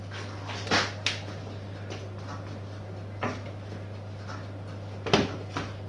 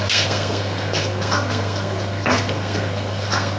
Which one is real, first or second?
first